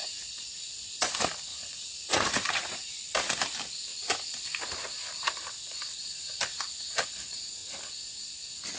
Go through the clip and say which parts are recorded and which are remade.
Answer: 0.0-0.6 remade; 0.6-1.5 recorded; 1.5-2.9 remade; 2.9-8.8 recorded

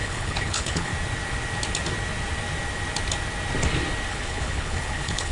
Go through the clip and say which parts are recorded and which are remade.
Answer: 0.0-0.9 remade; 0.9-4.1 recorded; 4.1-5.3 remade

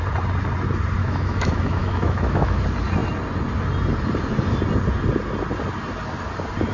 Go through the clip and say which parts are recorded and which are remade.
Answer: 0.0-1.0 recorded; 1.0-2.6 remade; 2.6-6.7 recorded

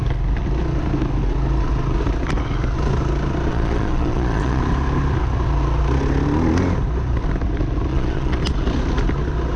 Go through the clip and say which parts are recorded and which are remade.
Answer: 0.0-3.5 recorded; 3.5-4.6 remade; 4.6-7.9 recorded; 7.9-8.4 remade; 8.4-9.6 recorded

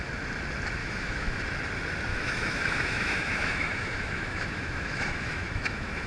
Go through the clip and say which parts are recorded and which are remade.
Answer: 0.0-0.8 recorded; 0.8-1.4 remade; 1.4-2.1 recorded; 2.1-6.1 remade

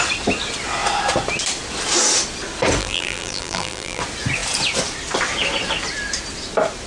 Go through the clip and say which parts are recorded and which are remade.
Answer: 0.0-2.8 recorded; 2.8-4.0 remade; 4.0-6.9 recorded

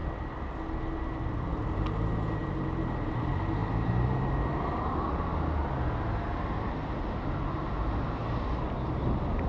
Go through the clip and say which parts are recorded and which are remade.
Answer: 0.0-9.5 recorded

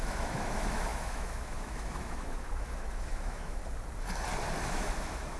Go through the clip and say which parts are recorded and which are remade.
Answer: 0.0-3.6 remade; 3.6-4.6 recorded; 4.6-5.4 remade